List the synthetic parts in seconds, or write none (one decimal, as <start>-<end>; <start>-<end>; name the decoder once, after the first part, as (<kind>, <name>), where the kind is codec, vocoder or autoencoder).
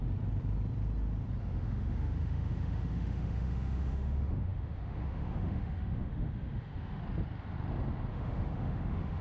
1.4-7.0 (autoencoder, DAC-VAE); 8.1-9.2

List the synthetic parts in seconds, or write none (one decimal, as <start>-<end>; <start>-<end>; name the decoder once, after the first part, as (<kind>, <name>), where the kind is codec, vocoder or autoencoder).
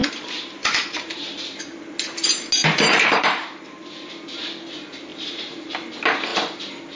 0.0-1.6 (vocoder, BigVGAN v2); 2.6-3.8; 5.1-5.7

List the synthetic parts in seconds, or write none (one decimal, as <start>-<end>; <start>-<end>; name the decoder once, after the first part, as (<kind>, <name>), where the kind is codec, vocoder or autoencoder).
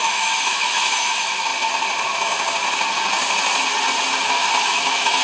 0.0-1.5 (autoencoder, DAC-VAE); 4.6-5.2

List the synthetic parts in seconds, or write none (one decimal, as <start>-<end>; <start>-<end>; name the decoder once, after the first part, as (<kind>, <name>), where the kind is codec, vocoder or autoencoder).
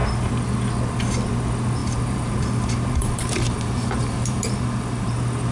1.8-5.1 (vocoder, BigVGAN v2)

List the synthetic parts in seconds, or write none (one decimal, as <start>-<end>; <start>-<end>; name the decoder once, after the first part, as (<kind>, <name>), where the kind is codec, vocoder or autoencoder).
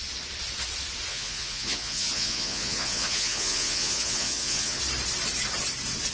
1.1-4.8 (vocoder, Vocos)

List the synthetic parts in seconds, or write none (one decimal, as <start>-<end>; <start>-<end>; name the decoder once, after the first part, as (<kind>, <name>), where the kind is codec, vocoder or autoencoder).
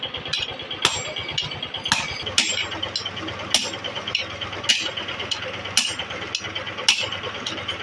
none